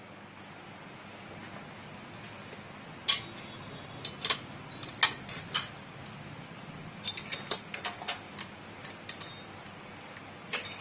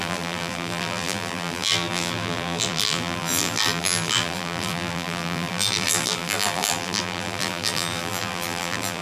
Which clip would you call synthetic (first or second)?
second